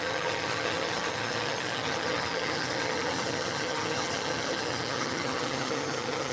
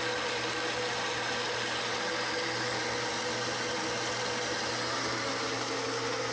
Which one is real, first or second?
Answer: second